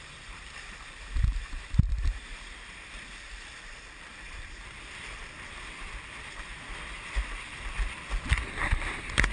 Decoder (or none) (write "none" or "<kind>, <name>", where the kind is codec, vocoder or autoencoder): vocoder, BigVGAN v2